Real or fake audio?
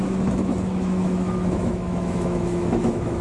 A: fake